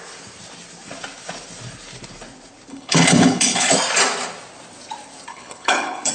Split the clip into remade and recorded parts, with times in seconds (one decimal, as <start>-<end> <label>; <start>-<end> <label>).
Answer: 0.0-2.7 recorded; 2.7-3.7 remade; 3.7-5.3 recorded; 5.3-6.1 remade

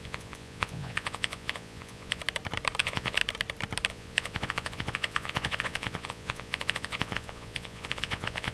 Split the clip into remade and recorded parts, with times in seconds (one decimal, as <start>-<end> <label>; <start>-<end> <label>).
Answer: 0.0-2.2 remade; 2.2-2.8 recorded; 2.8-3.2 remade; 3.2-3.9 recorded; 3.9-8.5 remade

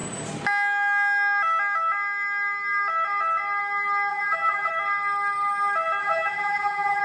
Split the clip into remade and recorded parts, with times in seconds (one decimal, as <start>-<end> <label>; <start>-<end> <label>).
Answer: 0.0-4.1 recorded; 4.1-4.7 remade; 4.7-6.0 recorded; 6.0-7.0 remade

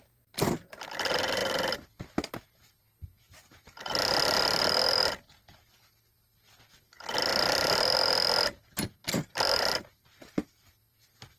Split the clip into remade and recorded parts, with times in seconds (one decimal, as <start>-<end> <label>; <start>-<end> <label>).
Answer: 0.0-11.4 recorded

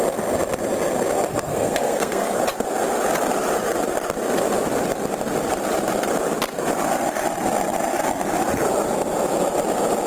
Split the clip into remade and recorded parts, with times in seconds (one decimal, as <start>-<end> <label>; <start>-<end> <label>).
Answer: 0.0-1.3 recorded; 1.3-2.4 remade; 2.4-10.1 recorded

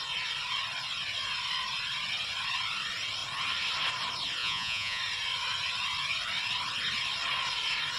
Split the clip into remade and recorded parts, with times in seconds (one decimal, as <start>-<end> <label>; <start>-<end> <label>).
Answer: 0.0-4.4 recorded; 4.4-5.0 remade; 5.0-8.0 recorded

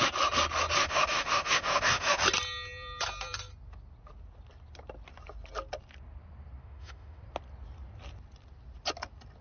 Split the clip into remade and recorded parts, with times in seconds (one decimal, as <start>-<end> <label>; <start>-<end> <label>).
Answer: 0.0-0.8 recorded; 0.8-2.2 remade; 2.2-6.6 recorded; 6.6-7.2 remade; 7.2-9.4 recorded

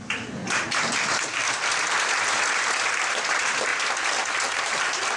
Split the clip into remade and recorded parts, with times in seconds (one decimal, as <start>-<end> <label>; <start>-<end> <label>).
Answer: 0.0-0.4 remade; 0.4-3.1 recorded; 3.1-3.7 remade; 3.7-4.3 recorded; 4.3-5.2 remade